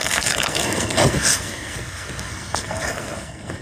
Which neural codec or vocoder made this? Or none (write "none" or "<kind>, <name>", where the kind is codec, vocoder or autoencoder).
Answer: codec, SNAC